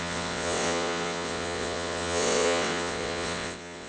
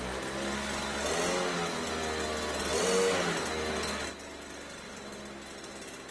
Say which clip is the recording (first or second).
second